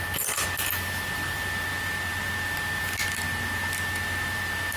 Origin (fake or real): real